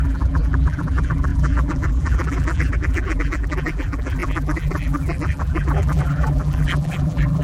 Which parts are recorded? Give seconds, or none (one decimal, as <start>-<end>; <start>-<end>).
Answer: none